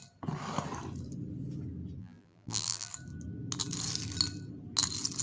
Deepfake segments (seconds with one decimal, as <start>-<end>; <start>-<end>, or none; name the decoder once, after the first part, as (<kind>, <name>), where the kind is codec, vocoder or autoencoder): 2.0-2.9 (vocoder, BigVGAN v2)